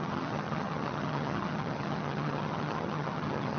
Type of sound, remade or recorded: remade